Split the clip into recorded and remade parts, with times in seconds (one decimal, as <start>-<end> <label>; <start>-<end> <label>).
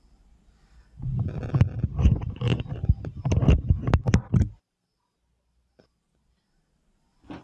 0.0-7.4 recorded